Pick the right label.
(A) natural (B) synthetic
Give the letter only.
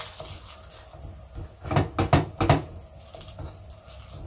A